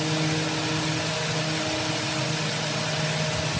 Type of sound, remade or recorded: recorded